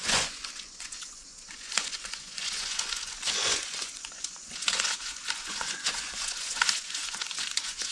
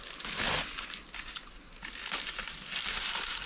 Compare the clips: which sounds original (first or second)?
second